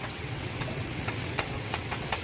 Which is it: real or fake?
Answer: fake